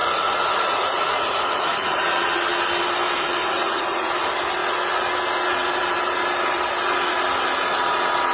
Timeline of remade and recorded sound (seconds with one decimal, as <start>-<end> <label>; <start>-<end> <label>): 0.0-2.0 remade; 2.0-3.4 recorded; 3.4-4.1 remade; 4.1-8.3 recorded